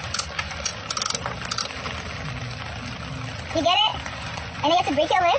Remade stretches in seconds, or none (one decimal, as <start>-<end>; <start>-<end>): 0.0-0.7; 3.5-5.4